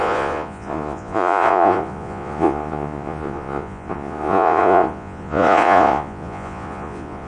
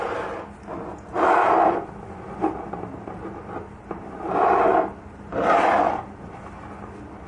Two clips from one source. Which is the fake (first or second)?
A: first